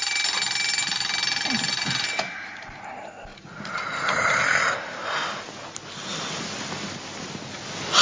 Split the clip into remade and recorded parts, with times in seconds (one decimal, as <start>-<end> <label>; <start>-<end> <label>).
0.0-3.3 recorded; 3.3-4.3 remade; 4.3-8.0 recorded